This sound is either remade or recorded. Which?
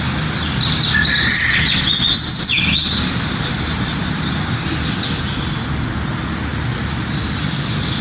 recorded